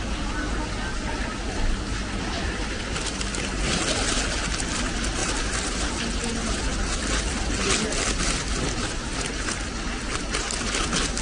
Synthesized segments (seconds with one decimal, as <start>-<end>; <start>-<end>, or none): none